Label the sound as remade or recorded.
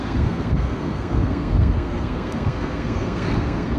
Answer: remade